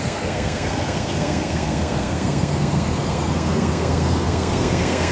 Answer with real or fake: fake